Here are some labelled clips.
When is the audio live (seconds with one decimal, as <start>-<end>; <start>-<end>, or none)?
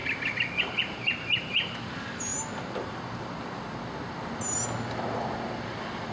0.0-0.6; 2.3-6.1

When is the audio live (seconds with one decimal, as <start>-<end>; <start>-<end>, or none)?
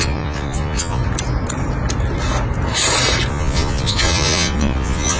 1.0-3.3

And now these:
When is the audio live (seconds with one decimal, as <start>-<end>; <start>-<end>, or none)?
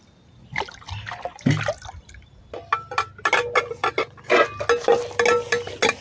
0.0-6.0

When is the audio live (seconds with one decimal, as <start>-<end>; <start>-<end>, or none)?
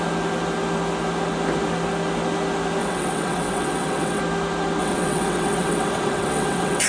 0.0-2.8; 4.2-4.8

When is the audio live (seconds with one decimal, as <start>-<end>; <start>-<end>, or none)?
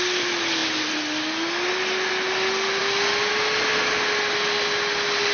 0.0-5.3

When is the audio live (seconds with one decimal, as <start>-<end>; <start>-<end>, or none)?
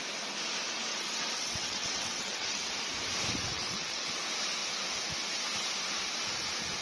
0.0-0.9; 2.7-3.5; 4.1-6.8